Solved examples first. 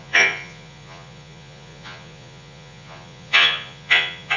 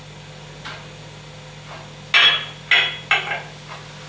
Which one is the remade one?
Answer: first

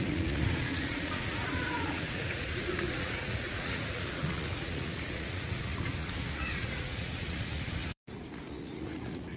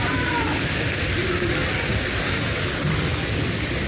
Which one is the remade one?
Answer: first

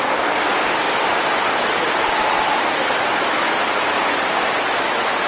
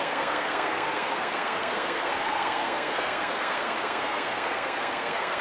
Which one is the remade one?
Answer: second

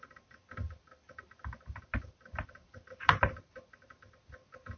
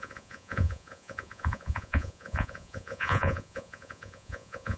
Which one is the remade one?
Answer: second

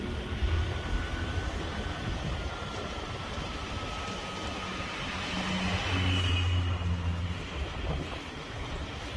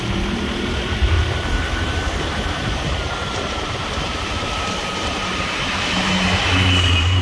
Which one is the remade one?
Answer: second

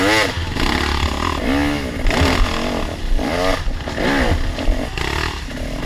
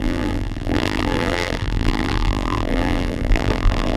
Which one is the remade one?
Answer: second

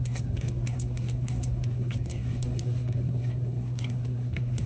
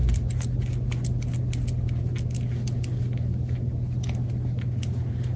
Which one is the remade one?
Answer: first